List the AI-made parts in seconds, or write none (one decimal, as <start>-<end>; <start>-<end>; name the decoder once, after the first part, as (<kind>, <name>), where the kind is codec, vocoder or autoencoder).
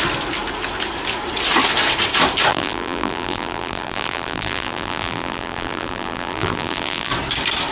2.5-7.1 (vocoder, BigVGAN v2)